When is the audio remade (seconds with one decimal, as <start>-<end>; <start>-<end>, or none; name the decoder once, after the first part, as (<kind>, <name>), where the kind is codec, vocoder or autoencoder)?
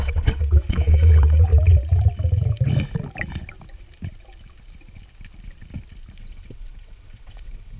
0.0-1.5 (vocoder, WaveNeXt); 6.2-7.8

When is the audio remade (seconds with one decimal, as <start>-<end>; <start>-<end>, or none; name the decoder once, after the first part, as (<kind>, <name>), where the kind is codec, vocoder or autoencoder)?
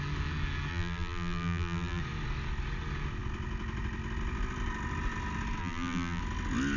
0.7-2.0 (vocoder, BigVGAN v2); 5.6-6.2